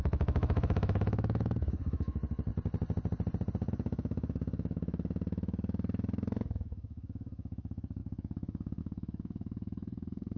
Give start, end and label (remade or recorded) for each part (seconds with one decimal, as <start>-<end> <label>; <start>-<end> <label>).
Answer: 0.0-2.5 remade; 2.5-3.7 recorded; 3.7-10.4 remade